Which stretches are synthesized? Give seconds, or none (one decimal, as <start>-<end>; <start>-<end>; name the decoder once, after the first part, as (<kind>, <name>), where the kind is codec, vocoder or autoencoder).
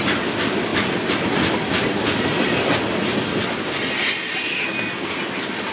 4.5-5.1 (codec, SNAC)